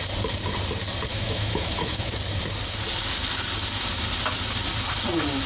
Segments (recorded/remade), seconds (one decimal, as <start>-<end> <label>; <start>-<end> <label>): 0.0-1.1 recorded; 1.1-2.1 remade; 2.1-5.5 recorded